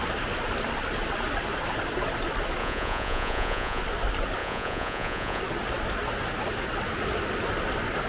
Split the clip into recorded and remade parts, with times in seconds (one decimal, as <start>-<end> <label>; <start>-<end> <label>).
0.0-2.6 recorded; 2.6-3.8 remade; 3.8-4.4 recorded; 4.4-5.4 remade; 5.4-8.1 recorded